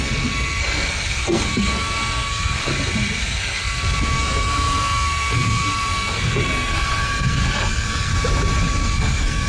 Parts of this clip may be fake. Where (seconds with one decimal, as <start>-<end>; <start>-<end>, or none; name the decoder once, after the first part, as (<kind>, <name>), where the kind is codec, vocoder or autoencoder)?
0.0-2.7 (codec, SNAC); 3.2-8.1; 8.6-9.5